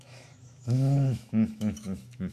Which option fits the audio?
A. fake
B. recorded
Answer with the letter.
A